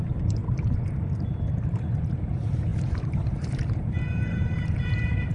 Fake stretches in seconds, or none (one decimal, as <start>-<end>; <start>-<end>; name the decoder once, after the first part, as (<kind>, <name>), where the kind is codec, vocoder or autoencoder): 0.0-0.4 (vocoder, BigVGAN v2); 0.9-5.3